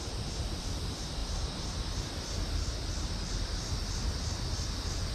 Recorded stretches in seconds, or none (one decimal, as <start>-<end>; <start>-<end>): 0.0-5.1